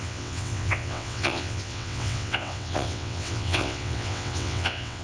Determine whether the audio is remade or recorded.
remade